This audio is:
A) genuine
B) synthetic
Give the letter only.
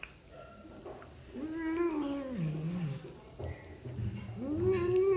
A